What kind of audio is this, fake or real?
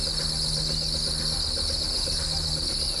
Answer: real